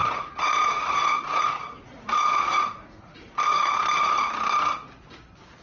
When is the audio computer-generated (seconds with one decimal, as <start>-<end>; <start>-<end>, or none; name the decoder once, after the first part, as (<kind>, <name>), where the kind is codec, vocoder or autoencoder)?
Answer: 0.0-3.4 (vocoder, Vocos)